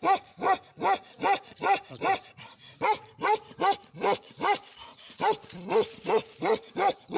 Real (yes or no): no